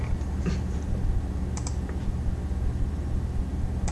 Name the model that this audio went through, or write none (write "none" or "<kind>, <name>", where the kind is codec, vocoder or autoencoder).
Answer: vocoder, BigVGAN v2